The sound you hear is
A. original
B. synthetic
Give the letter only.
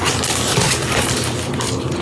A